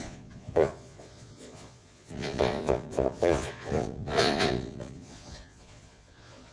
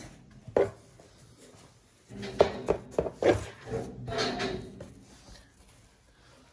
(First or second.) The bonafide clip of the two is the second